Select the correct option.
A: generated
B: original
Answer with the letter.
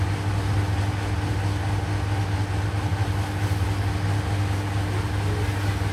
B